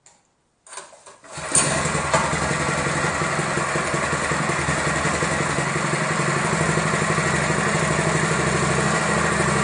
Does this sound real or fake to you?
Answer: real